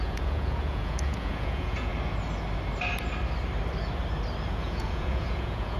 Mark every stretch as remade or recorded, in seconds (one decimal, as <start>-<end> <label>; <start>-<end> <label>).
0.0-1.9 remade; 1.9-4.5 recorded; 4.5-5.8 remade